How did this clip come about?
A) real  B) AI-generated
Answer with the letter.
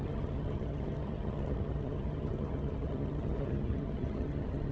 B